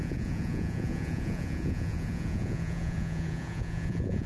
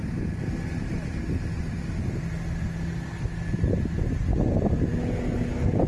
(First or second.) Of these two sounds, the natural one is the second